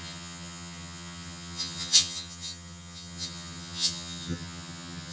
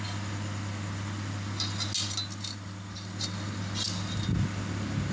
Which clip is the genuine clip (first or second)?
second